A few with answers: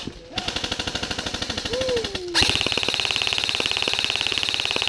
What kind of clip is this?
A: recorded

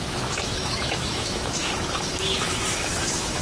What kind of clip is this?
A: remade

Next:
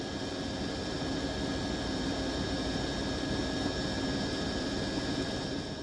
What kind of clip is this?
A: recorded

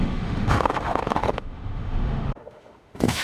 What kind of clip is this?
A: remade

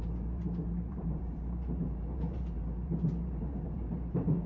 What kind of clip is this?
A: remade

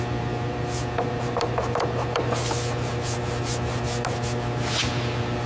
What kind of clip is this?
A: recorded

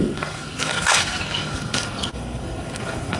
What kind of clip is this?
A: remade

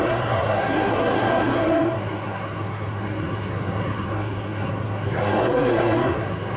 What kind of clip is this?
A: remade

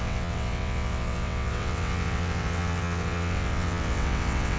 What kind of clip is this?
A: remade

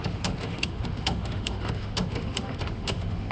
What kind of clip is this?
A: remade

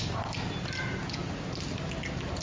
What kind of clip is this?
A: recorded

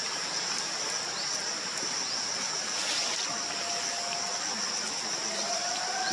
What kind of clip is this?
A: recorded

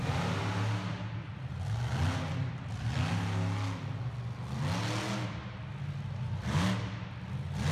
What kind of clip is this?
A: recorded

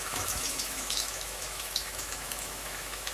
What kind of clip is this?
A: remade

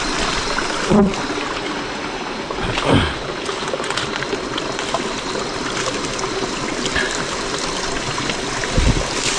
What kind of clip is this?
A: recorded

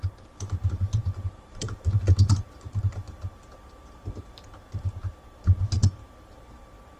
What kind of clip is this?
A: remade